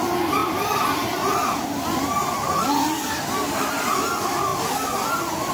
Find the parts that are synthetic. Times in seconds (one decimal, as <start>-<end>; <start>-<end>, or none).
none